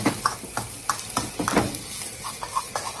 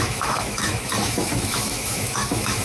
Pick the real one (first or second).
first